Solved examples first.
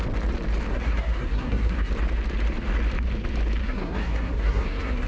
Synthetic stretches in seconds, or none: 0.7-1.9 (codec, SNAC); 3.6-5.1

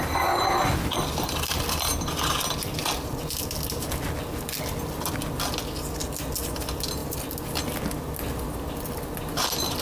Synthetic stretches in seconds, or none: none

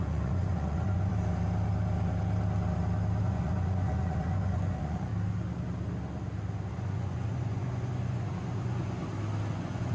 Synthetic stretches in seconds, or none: 0.0-1.1 (vocoder, Vocos); 3.2-5.1; 6.7-9.0; 9.5-9.9

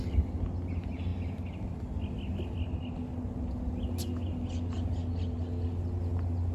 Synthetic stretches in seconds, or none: none

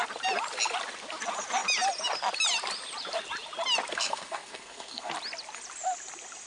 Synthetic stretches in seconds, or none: 3.9-5.1 (codec, SNAC)

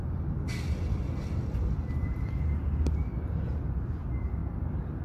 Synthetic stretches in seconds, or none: none

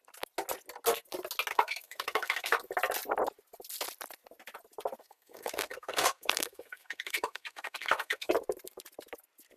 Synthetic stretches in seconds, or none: 1.5-2.6 (codec, SNAC); 5.0-8.3